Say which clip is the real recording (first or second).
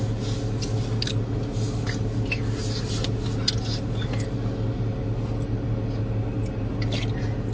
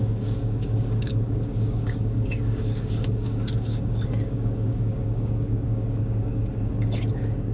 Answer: first